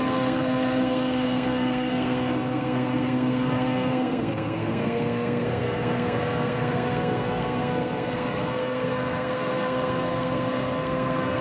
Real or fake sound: fake